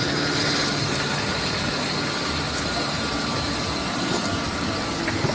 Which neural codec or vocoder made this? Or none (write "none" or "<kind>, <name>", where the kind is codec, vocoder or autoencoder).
none